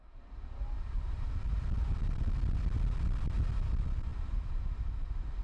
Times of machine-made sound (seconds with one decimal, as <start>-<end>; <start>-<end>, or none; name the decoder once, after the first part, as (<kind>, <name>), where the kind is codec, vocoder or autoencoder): none